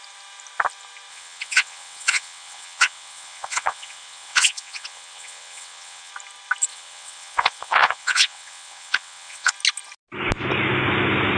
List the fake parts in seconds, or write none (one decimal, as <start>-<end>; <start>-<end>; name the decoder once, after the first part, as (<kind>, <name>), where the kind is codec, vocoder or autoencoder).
1.1-6.1 (vocoder, WaveNeXt); 6.7-9.5